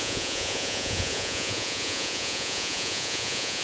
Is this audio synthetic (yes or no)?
yes